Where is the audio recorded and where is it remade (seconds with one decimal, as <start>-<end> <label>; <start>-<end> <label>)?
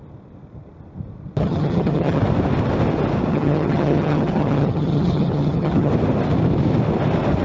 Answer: 0.0-1.4 recorded; 1.4-2.2 remade; 2.2-3.3 recorded; 3.3-5.9 remade; 5.9-7.4 recorded